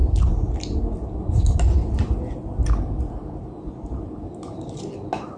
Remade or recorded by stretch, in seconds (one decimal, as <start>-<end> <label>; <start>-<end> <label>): 0.0-5.4 recorded